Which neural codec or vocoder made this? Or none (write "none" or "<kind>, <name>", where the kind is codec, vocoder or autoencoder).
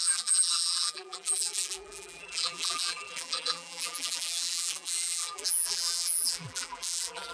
vocoder, BigVGAN v2